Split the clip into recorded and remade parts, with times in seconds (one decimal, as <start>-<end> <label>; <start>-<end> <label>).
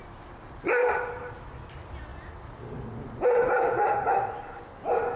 0.0-0.8 recorded; 0.8-1.3 remade; 1.3-5.2 recorded